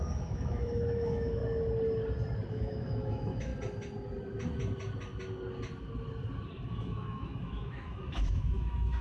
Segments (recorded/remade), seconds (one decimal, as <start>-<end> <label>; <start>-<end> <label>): 0.0-1.4 remade; 1.4-2.5 recorded; 2.5-3.5 remade; 3.5-6.7 recorded; 6.7-9.0 remade